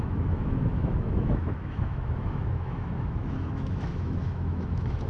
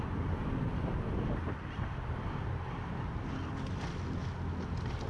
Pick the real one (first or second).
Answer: second